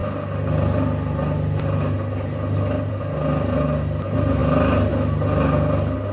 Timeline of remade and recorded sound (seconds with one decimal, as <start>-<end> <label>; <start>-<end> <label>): 0.0-6.1 recorded